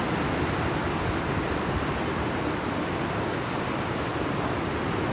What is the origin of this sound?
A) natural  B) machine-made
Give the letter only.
A